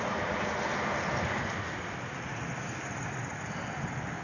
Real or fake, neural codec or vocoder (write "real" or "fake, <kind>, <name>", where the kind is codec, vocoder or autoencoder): real